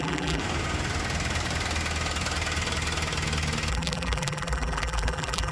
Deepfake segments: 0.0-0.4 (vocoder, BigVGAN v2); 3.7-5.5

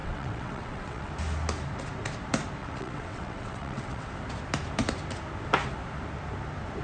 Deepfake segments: 0.0-1.1 (vocoder, WaveNeXt); 2.6-4.1

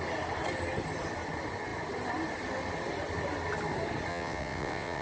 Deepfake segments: 4.1-5.0 (vocoder, WaveNeXt)

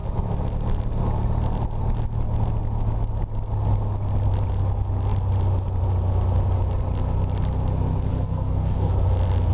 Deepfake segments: 8.1-8.9 (codec, SNAC)

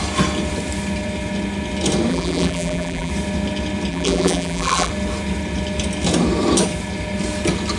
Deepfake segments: 2.1-3.1 (vocoder, BigVGAN v2); 3.9-4.9

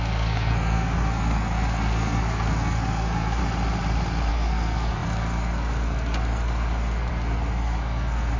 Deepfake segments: 0.0-3.4 (codec, SNAC); 4.3-8.4